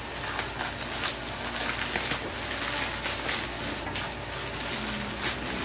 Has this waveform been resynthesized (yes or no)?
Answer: no